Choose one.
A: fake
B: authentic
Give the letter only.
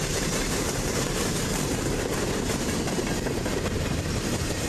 A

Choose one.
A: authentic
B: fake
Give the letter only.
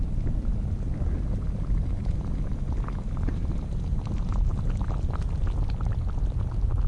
A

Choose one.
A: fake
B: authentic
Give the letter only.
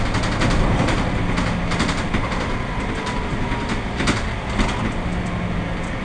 B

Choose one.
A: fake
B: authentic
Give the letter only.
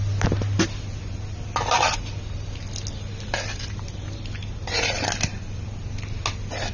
B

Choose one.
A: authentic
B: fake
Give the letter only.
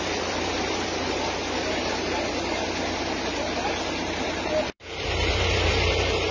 A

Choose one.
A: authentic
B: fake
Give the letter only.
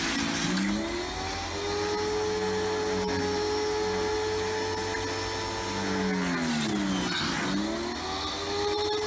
A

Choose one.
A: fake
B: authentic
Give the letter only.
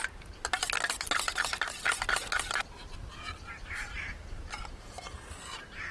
B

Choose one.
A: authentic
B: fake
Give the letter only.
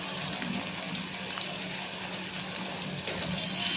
A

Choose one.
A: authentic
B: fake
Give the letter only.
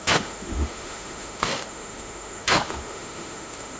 B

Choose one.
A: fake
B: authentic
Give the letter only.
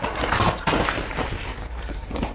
B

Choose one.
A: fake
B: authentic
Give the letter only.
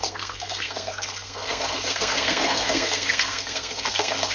A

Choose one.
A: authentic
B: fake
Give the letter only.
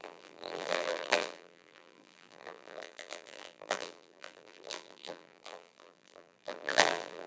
B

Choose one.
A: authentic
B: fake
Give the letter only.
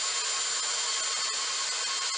A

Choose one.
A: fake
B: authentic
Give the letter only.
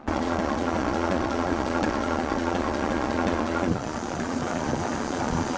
A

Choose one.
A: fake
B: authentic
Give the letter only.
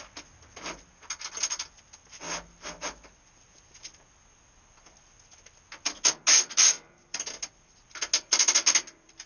B